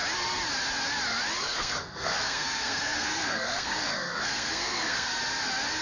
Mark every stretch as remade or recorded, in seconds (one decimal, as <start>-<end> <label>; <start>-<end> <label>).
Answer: 0.0-1.4 recorded; 1.4-5.1 remade; 5.1-5.8 recorded